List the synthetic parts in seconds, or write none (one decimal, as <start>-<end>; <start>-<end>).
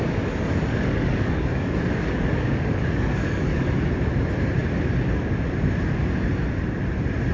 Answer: 0.5-3.7